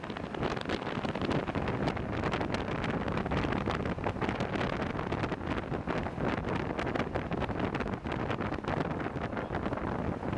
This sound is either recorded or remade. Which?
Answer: recorded